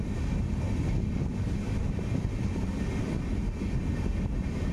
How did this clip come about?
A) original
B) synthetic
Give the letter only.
A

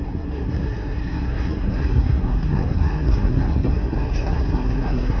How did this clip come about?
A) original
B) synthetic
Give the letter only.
B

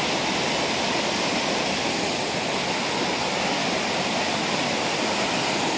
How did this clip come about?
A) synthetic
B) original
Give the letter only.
B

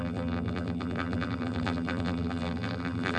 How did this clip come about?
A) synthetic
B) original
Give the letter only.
A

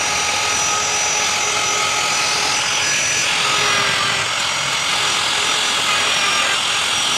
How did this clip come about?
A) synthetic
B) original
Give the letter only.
B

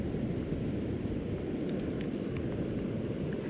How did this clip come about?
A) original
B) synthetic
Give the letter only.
A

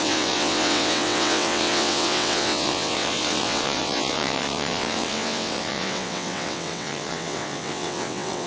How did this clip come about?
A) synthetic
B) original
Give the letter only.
A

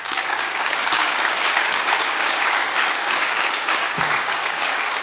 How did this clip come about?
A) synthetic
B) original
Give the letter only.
A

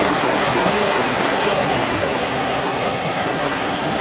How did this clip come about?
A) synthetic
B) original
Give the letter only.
A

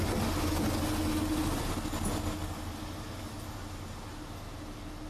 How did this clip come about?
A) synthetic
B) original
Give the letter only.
B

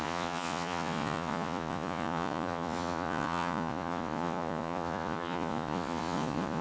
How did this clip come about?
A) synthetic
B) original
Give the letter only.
A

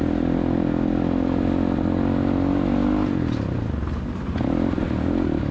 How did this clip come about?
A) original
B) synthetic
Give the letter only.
A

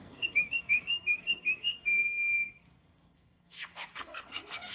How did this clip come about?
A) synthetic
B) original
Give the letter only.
A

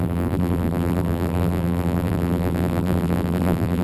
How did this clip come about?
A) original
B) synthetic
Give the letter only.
B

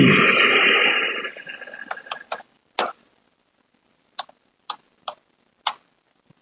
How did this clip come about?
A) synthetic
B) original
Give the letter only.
B